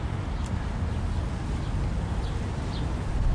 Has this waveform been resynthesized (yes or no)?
no